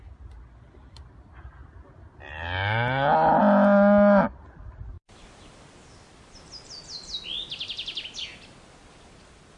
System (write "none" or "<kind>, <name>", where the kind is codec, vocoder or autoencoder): none